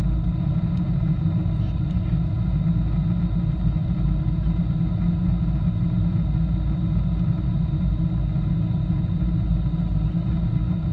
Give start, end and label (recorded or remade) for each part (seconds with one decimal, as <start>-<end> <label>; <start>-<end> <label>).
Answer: 0.0-10.9 recorded